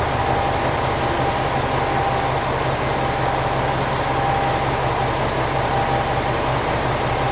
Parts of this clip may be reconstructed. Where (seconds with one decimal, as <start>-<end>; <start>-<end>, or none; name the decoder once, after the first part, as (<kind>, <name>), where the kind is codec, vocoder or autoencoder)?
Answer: 6.5-7.3 (vocoder, BigVGAN v2)